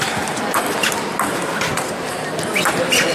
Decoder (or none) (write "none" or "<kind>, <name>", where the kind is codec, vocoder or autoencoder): none